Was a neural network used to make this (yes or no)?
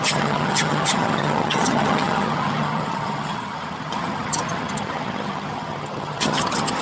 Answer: yes